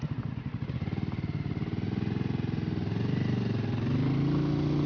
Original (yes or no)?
yes